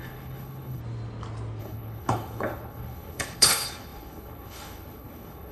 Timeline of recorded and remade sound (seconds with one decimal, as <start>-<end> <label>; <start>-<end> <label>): 0.0-0.8 remade; 0.8-1.6 recorded; 1.6-5.5 remade